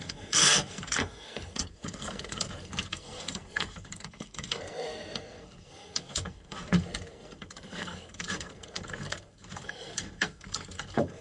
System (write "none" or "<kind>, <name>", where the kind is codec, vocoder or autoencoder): codec, SNAC